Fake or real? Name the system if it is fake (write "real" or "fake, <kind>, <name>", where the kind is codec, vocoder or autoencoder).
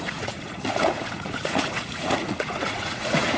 fake, vocoder, Vocos